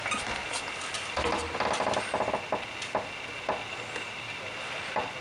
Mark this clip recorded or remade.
recorded